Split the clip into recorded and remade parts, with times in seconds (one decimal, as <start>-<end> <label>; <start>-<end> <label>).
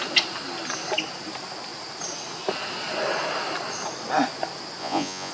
0.0-4.8 recorded; 4.8-5.3 remade